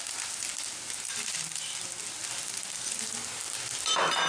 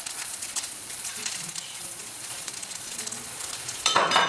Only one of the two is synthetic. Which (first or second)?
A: second